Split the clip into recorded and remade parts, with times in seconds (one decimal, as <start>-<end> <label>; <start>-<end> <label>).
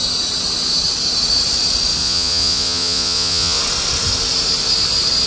0.0-2.0 recorded; 2.0-3.6 remade; 3.6-5.3 recorded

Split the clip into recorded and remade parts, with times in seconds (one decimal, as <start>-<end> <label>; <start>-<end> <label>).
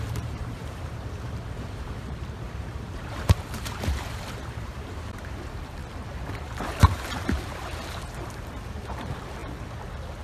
0.0-5.8 remade; 5.8-6.3 recorded; 6.3-9.4 remade; 9.4-10.2 recorded